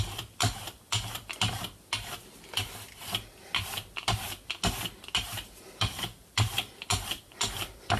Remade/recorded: recorded